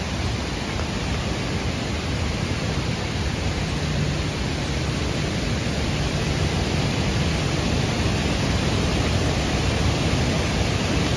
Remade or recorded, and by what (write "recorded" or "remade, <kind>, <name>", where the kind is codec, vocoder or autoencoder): recorded